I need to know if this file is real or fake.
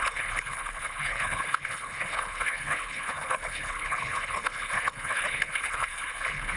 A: fake